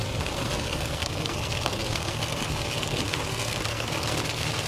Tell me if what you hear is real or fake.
fake